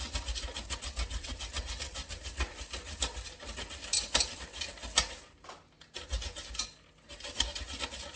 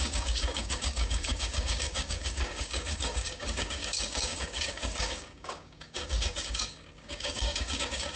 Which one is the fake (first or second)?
second